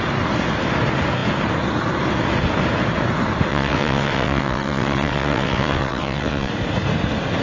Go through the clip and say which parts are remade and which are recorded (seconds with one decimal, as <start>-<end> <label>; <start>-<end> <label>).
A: 0.0-3.5 recorded; 3.5-6.5 remade; 6.5-7.4 recorded